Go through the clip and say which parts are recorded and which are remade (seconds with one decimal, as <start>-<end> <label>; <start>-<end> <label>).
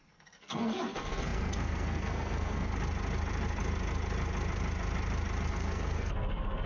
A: 0.0-2.7 remade; 2.7-5.5 recorded; 5.5-6.7 remade